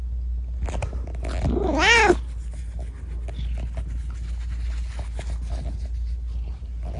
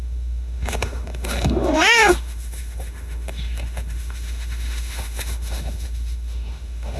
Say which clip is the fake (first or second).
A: second